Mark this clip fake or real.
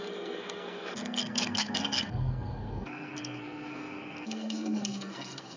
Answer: fake